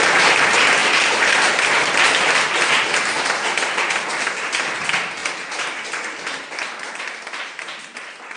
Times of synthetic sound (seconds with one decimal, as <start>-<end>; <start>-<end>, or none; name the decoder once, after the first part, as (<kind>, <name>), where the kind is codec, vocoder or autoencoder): none